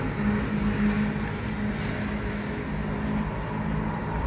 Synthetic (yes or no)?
no